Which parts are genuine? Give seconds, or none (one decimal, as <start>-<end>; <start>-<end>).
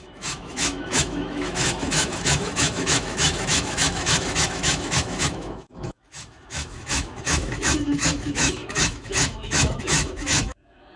none